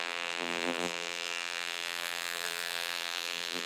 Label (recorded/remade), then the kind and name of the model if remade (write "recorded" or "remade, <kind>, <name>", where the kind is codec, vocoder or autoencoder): remade, vocoder, BigVGAN v2